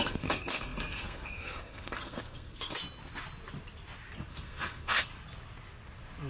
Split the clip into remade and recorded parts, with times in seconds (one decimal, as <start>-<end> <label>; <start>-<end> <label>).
0.0-2.8 remade; 2.8-4.3 recorded; 4.3-5.1 remade; 5.1-6.3 recorded